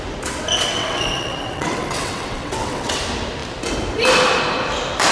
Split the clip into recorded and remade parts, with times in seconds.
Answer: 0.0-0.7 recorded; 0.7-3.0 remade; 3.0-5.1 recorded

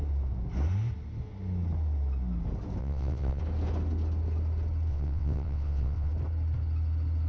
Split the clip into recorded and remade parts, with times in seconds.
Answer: 0.0-2.8 recorded; 2.8-3.4 remade; 3.4-4.9 recorded; 4.9-6.1 remade; 6.1-7.3 recorded

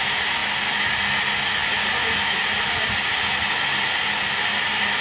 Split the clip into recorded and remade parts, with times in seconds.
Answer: 0.0-5.0 recorded

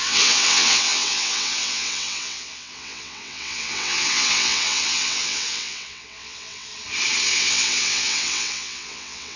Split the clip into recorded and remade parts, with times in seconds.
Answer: 0.0-6.7 remade; 6.7-7.2 recorded; 7.2-9.4 remade